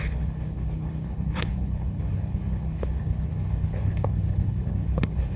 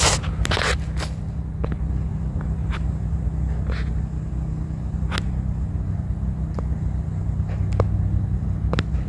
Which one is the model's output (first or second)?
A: first